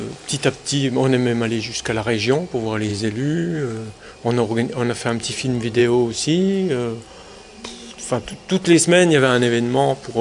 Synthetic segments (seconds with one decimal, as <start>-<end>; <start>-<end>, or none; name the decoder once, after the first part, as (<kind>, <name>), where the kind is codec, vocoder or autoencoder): 2.9-3.9 (vocoder, Vocos)